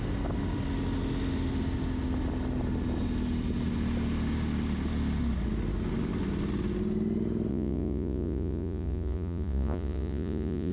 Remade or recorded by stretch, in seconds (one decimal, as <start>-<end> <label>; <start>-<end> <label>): 0.0-7.5 recorded; 7.5-10.7 remade